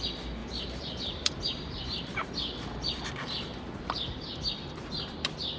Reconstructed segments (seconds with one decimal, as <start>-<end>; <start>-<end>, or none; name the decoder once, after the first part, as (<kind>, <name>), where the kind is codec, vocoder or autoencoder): 0.4-3.1 (vocoder, BigVGAN v2)